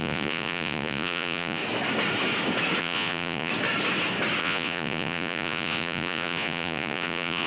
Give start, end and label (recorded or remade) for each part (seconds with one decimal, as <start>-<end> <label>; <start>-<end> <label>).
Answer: 0.0-1.6 remade; 1.6-2.8 recorded; 2.8-3.5 remade; 3.5-4.4 recorded; 4.4-7.5 remade